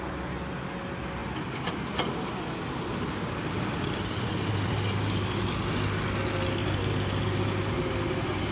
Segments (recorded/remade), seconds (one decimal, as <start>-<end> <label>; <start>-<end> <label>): 0.0-8.5 recorded

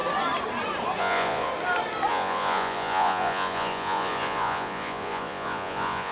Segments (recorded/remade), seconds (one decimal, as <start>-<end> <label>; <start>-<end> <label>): 0.0-1.0 recorded; 1.0-1.5 remade; 1.5-2.1 recorded; 2.1-6.1 remade

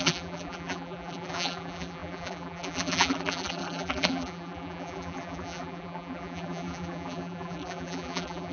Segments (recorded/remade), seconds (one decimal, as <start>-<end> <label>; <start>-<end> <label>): 0.0-8.5 remade

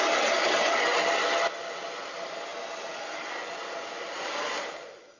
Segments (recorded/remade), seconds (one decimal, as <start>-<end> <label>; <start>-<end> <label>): 0.0-5.2 recorded

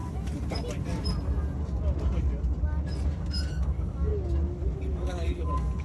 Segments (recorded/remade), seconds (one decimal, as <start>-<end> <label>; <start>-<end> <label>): 0.0-3.5 recorded; 3.5-4.1 remade; 4.1-4.9 recorded; 4.9-5.8 remade

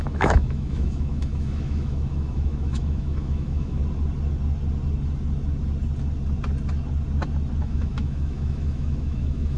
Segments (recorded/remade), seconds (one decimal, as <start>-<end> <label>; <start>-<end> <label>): 0.0-3.8 remade; 3.8-7.6 recorded; 7.6-9.6 remade

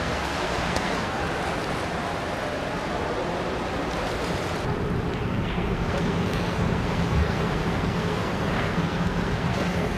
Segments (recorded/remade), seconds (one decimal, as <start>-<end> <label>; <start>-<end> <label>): 0.0-1.2 remade; 1.2-5.2 recorded; 5.2-10.0 remade

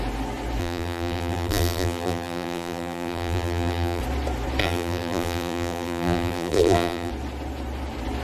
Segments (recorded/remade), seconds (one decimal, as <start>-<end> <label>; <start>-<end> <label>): 0.0-0.6 recorded; 0.6-4.0 remade; 4.0-4.6 recorded; 4.6-7.1 remade; 7.1-8.2 recorded